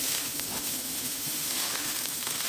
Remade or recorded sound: remade